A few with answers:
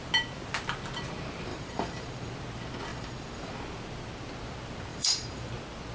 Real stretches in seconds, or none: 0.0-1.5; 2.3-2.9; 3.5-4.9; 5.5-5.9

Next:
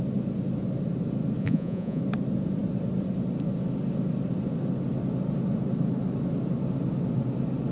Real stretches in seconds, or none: 0.0-1.4; 2.0-7.7

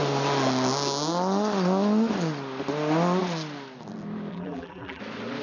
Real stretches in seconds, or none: 0.0-4.3; 5.0-5.4

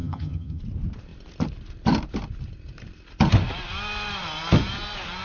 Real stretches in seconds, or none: 0.6-5.2

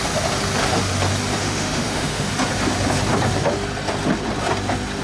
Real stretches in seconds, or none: 0.0-1.4; 2.3-5.0

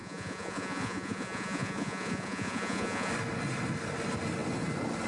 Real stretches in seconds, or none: 3.1-5.1

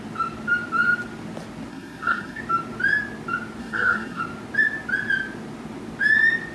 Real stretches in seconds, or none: 0.0-1.7; 2.4-3.6; 4.2-6.5